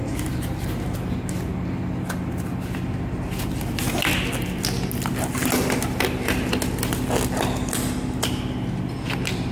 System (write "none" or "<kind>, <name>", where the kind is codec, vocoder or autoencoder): none